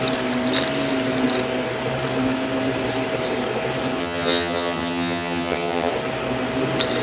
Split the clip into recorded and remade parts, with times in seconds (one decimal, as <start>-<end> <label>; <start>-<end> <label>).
0.0-4.0 recorded; 4.0-5.9 remade; 5.9-7.0 recorded

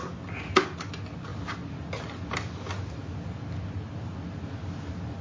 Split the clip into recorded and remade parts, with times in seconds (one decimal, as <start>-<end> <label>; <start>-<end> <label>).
0.0-5.2 recorded

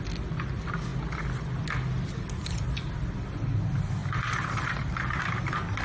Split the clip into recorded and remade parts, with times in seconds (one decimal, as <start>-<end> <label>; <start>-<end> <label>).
0.0-5.8 recorded

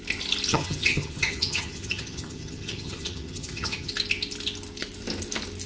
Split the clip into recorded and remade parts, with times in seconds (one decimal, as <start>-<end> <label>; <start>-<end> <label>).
0.0-0.5 recorded; 0.5-3.9 remade; 3.9-5.7 recorded